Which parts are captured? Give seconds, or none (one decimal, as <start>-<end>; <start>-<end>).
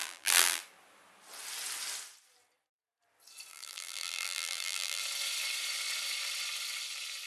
0.6-3.5; 5.0-7.3